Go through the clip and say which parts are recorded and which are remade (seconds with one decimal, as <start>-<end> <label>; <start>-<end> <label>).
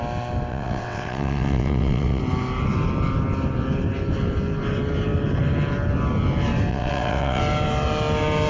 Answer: 0.0-0.5 recorded; 0.5-2.2 remade; 2.2-6.7 recorded; 6.7-7.4 remade; 7.4-8.5 recorded